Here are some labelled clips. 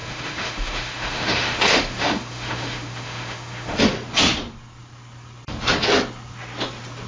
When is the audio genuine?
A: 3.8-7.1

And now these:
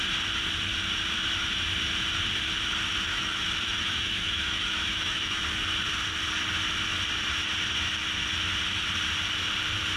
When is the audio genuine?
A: 0.0-3.1; 5.4-10.0